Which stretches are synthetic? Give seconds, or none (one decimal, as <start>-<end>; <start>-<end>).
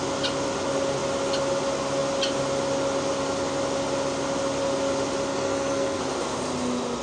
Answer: 5.3-6.0